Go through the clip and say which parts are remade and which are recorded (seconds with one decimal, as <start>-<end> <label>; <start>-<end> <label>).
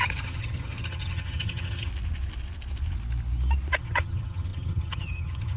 0.0-1.9 remade; 1.9-3.8 recorded; 3.8-5.6 remade